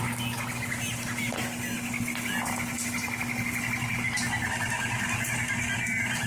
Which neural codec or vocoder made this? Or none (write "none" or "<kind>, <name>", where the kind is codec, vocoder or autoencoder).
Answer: none